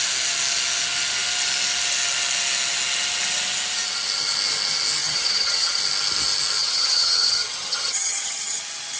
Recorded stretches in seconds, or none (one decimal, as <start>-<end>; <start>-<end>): 0.0-5.0; 5.8-6.6; 8.6-9.0

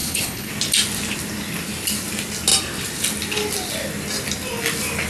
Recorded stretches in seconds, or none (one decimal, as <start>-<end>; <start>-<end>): 0.5-5.1

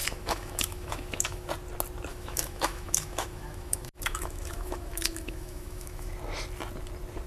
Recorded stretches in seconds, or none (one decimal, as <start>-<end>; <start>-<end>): 1.5-2.1; 6.1-7.3

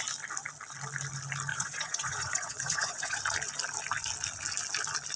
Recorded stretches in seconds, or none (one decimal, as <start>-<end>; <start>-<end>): 0.0-1.5; 3.2-5.2

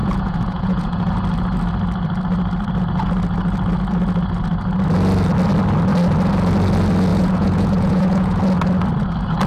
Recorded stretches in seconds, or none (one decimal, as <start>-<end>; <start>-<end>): 1.1-7.1; 8.4-9.5

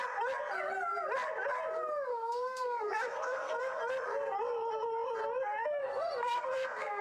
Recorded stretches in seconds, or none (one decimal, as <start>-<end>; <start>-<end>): 0.0-2.1; 3.8-5.8